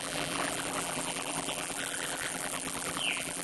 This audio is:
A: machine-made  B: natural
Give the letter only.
A